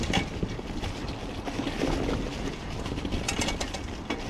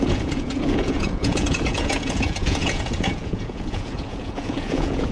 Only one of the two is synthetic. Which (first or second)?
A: second